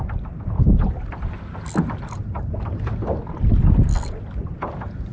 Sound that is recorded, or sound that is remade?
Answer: recorded